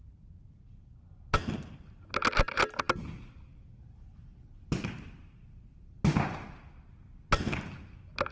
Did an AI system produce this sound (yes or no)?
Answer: no